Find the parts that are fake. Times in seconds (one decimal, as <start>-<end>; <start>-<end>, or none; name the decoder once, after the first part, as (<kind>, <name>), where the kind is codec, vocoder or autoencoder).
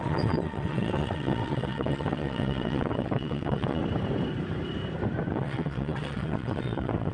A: 0.0-3.8 (vocoder, WaveNeXt); 5.3-7.1